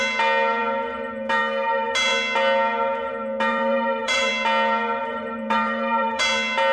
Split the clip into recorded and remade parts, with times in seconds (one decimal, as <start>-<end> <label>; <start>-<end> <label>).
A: 0.0-3.5 recorded; 3.5-4.3 remade; 4.3-5.0 recorded; 5.0-6.2 remade; 6.2-6.7 recorded